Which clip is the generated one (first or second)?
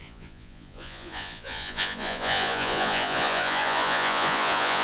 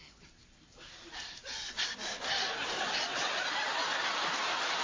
first